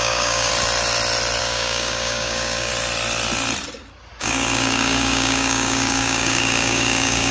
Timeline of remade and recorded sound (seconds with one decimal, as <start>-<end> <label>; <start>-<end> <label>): 0.0-0.5 remade; 0.5-1.4 recorded; 1.4-2.7 remade; 2.7-4.2 recorded; 4.2-7.3 remade